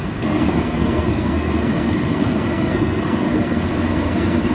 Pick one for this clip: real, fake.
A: fake